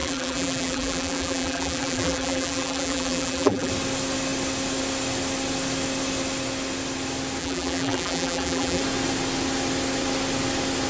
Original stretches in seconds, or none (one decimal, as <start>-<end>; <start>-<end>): 3.7-7.4; 8.8-10.9